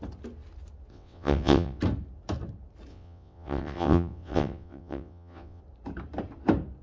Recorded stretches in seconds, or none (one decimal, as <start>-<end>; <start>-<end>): 0.0-0.9; 1.8-2.9; 5.6-6.8